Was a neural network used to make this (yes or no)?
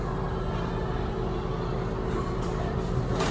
no